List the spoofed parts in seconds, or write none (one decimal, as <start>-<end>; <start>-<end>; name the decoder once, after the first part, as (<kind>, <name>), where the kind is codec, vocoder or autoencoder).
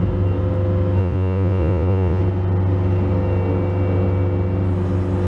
1.0-2.2 (vocoder, Vocos)